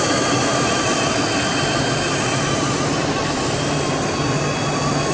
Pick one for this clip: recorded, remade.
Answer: recorded